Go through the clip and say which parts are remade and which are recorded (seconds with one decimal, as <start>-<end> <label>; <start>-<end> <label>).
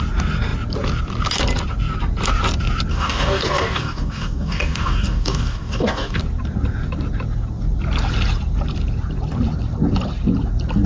0.0-2.9 recorded; 2.9-6.2 remade; 6.2-10.9 recorded